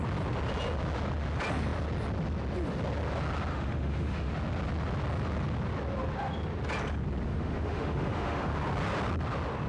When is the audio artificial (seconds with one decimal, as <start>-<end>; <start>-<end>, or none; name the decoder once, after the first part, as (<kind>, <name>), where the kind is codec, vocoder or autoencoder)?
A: 3.5-4.3 (autoencoder, DAC-VAE); 7.3-8.5